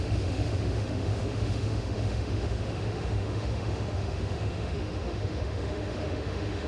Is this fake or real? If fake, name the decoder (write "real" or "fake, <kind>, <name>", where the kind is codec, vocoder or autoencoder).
fake, autoencoder, DAC-VAE